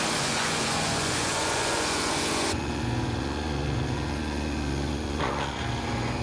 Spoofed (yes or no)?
yes